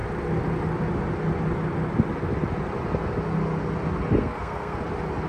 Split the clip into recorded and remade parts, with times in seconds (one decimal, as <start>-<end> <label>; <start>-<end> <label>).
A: 0.0-4.2 recorded; 4.2-4.8 remade; 4.8-5.3 recorded